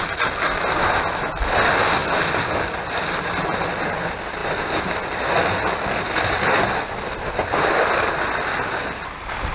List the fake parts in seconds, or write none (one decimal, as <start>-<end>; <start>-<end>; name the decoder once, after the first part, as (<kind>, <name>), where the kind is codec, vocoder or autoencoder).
none